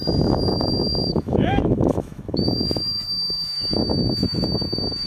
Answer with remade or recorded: remade